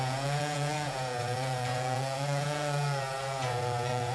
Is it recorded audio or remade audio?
remade